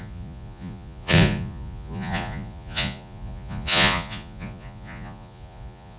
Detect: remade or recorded remade